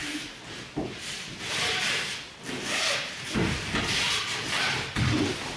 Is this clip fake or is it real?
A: real